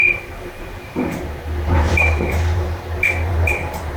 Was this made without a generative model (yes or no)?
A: no